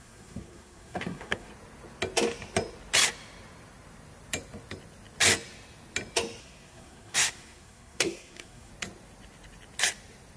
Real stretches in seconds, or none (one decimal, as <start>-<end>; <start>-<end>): 1.5-6.4; 8.7-10.4